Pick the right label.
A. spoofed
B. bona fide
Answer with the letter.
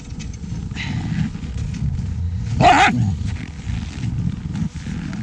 B